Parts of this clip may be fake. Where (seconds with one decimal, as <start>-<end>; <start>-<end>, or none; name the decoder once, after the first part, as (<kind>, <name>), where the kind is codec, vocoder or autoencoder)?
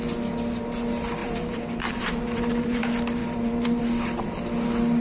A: 1.2-2.8 (vocoder, BigVGAN v2); 3.2-3.8